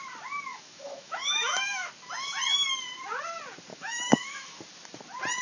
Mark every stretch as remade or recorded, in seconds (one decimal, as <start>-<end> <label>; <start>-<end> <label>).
0.0-0.5 recorded; 0.5-1.9 remade; 1.9-3.7 recorded; 3.7-4.6 remade; 4.6-5.4 recorded